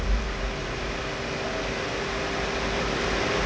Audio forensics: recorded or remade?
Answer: recorded